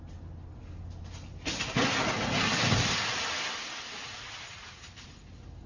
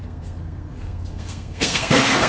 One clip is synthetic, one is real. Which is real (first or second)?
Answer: first